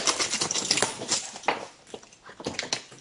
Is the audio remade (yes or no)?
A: no